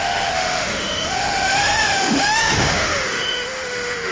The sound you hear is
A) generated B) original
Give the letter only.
A